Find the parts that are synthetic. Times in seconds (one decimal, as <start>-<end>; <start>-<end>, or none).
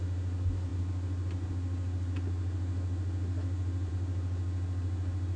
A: none